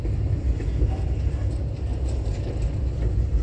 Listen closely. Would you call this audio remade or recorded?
recorded